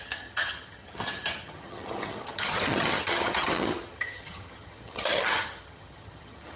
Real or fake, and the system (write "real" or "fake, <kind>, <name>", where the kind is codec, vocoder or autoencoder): fake, vocoder, HiFi-GAN